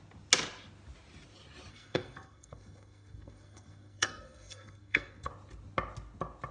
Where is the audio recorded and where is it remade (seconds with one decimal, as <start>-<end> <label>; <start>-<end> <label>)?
0.0-1.7 recorded; 1.7-5.3 remade; 5.3-6.5 recorded